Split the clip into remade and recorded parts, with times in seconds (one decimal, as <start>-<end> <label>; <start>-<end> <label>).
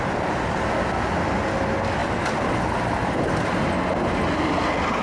0.0-5.0 recorded